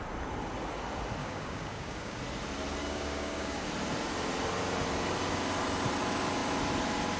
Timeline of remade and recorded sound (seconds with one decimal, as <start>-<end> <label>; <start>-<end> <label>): 0.0-1.2 recorded; 1.2-2.2 remade; 2.2-2.8 recorded; 2.8-3.6 remade; 3.6-7.2 recorded